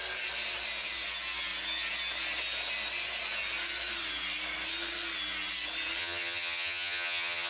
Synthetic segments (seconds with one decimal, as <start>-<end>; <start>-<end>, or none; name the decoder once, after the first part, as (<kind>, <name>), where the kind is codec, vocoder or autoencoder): 6.0-7.5 (vocoder, HiFi-GAN)